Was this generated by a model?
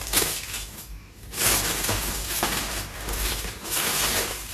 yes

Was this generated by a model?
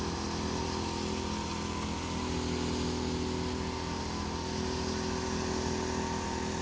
no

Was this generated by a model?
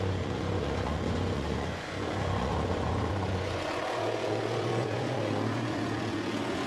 yes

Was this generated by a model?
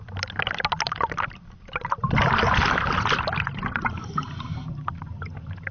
no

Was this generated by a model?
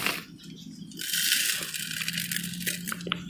no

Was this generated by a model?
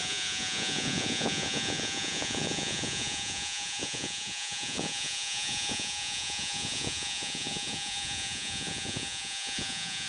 yes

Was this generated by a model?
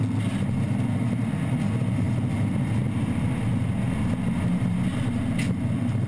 no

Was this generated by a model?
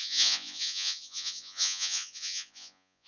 yes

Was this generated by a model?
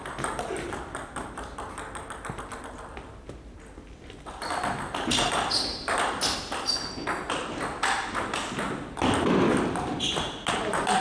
no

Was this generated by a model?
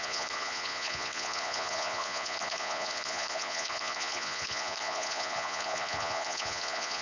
yes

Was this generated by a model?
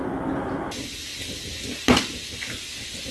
no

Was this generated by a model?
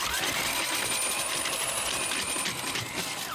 no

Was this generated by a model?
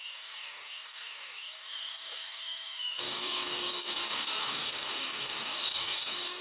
yes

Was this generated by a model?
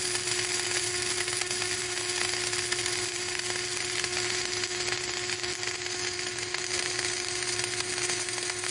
no